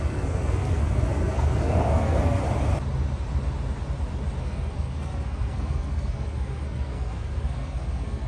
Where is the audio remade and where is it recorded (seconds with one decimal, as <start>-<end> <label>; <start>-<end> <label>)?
0.0-2.4 remade; 2.4-4.4 recorded; 4.4-8.3 remade